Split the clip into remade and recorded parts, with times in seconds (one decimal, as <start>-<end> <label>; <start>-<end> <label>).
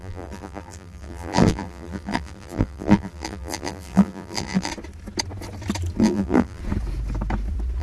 0.0-4.7 remade; 4.7-6.0 recorded; 6.0-6.6 remade; 6.6-7.8 recorded